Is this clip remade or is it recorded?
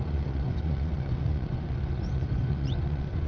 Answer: remade